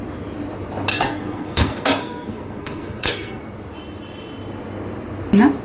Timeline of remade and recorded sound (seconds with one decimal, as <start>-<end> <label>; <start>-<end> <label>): 0.0-0.9 recorded; 0.9-3.4 remade; 3.4-5.6 recorded